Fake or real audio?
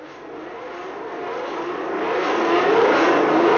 real